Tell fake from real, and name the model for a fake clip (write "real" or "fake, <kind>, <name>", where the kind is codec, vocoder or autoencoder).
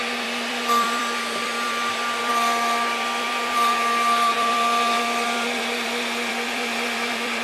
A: fake, vocoder, BigVGAN v2